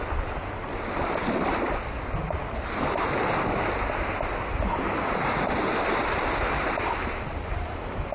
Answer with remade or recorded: recorded